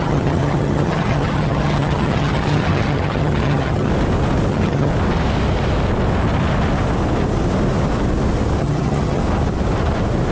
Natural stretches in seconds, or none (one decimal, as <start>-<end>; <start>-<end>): 3.9-4.5; 4.9-8.6; 9.2-10.3